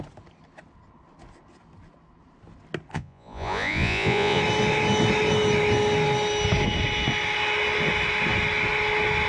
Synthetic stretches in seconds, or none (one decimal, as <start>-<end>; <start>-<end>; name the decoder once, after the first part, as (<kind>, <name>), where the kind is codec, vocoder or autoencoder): 2.9-4.4 (vocoder, Vocos)